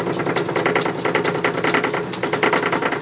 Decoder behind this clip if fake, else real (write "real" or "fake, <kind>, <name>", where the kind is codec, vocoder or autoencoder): real